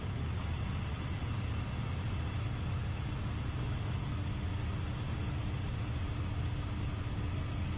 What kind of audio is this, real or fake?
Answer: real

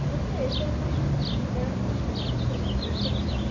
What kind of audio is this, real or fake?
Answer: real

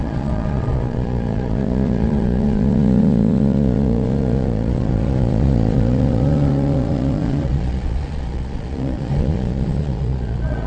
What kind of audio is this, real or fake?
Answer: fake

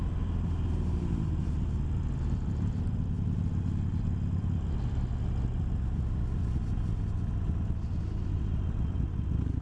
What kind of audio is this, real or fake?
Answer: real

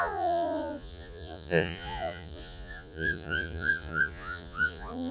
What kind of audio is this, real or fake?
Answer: fake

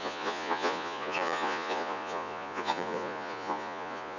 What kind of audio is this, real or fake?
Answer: fake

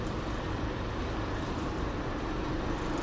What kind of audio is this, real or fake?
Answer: real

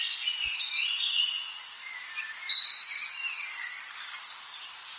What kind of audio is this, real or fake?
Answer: real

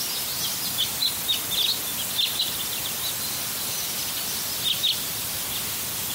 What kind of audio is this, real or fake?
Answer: real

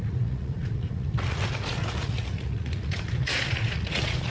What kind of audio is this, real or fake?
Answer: fake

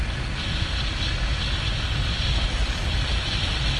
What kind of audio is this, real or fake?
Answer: real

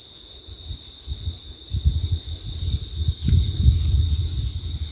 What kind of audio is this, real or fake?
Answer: real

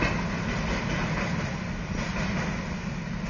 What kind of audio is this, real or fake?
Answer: real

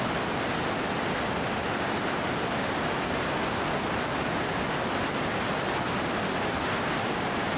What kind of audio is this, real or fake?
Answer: real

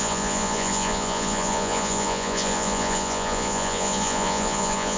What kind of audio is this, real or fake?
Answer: fake